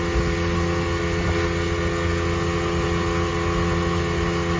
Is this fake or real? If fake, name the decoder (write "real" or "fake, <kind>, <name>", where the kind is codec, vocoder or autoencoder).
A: real